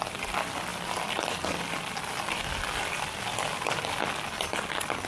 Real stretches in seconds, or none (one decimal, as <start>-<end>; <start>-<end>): 0.0-0.7; 3.2-5.1